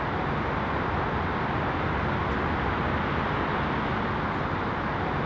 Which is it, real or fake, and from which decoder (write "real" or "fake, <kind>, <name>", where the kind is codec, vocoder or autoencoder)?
real